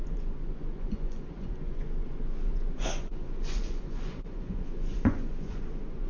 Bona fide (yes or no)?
no